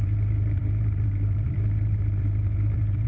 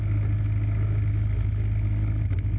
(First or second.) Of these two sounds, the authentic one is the second